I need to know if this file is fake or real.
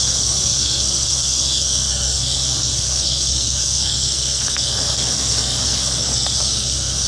fake